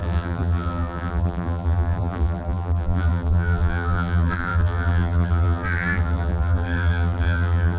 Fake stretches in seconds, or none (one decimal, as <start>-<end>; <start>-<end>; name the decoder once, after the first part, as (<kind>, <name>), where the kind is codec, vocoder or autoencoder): 0.0-7.8 (vocoder, BigVGAN v2)